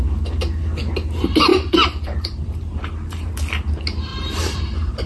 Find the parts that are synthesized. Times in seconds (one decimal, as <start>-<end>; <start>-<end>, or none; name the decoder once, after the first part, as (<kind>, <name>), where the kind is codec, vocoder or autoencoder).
1.5-3.3 (vocoder, BigVGAN v2); 4.1-5.1